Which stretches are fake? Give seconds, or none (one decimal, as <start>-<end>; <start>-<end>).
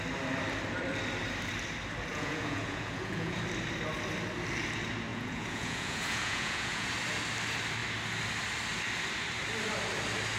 2.1-3.4; 5.1-6.9